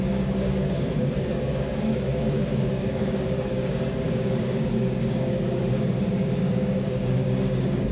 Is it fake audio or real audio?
fake